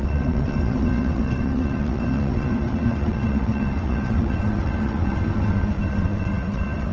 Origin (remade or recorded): remade